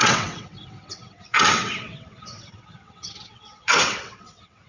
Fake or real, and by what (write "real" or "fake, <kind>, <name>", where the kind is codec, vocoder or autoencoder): fake, vocoder, WaveNeXt